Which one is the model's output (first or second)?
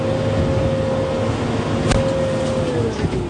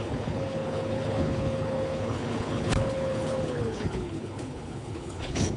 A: second